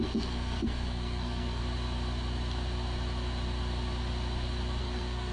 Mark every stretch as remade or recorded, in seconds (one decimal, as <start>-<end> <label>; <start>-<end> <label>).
0.0-1.6 remade; 1.6-4.8 recorded; 4.8-5.3 remade